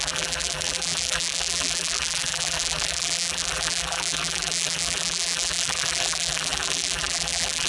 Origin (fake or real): fake